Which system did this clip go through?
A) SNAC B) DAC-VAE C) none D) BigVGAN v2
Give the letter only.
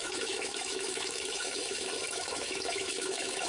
B